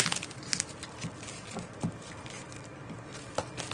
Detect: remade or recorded recorded